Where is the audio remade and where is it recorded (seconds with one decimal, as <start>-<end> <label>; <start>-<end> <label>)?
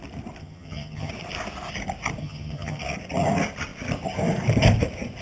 0.0-0.4 recorded; 0.4-1.1 remade; 1.1-2.2 recorded; 2.2-2.8 remade; 2.8-5.2 recorded